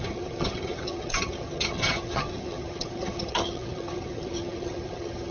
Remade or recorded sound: remade